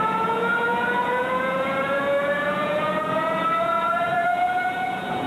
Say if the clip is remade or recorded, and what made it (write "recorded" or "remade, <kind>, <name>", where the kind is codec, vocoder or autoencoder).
remade, vocoder, Vocos